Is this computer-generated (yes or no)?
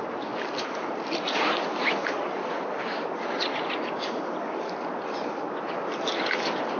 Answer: no